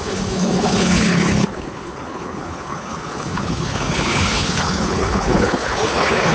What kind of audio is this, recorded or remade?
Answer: remade